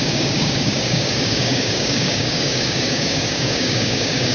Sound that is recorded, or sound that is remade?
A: remade